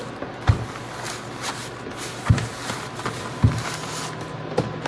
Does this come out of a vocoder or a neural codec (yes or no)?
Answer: no